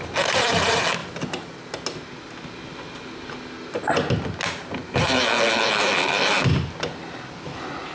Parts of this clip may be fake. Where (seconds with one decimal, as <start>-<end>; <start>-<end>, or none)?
none